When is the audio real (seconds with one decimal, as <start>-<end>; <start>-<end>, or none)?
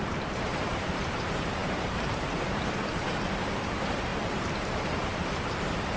4.1-4.6